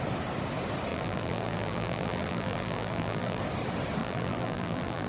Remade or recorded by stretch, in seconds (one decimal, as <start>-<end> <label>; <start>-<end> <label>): 0.0-0.9 recorded; 0.9-3.4 remade; 3.4-4.0 recorded; 4.0-5.1 remade